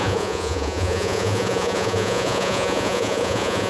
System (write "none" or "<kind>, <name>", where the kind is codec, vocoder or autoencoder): vocoder, Vocos